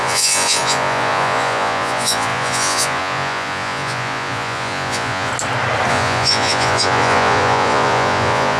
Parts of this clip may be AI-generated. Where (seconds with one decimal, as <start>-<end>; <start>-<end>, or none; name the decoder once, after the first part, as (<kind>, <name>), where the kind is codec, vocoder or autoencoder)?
0.0-5.3 (vocoder, Vocos); 5.9-8.6